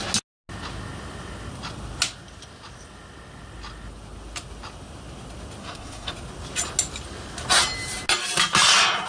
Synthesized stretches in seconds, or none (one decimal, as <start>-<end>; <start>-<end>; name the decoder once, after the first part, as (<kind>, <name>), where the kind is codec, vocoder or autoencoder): 5.6-6.1 (codec, SNAC)